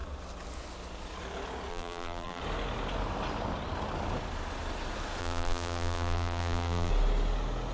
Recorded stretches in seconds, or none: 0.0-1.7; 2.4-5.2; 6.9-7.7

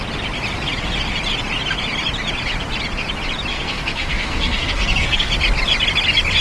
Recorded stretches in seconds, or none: 0.0-3.5; 5.3-6.4

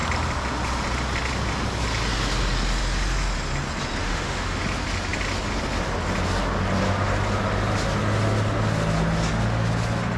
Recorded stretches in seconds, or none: 0.0-4.0; 4.6-10.2

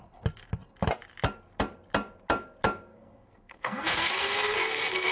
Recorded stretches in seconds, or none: 0.0-2.9

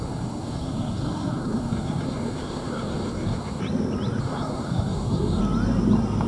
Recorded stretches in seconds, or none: 3.6-4.2; 5.4-6.3

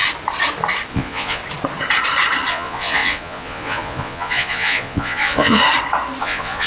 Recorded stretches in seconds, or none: 0.0-0.9; 1.4-2.5; 5.6-6.2